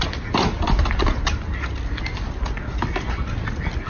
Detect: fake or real real